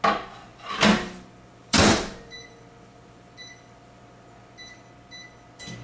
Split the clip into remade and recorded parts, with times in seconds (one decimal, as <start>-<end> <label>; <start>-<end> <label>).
0.0-0.5 recorded; 0.5-4.0 remade; 4.0-5.8 recorded